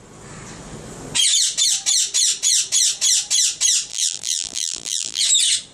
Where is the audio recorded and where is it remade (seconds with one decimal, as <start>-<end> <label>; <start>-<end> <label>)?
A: 0.0-3.9 recorded; 3.9-5.2 remade; 5.2-5.7 recorded